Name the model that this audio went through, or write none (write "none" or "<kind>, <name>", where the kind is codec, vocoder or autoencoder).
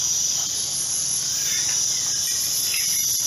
vocoder, BigVGAN v2